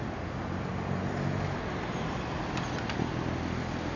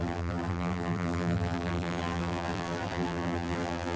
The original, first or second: first